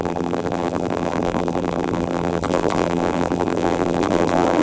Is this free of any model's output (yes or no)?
no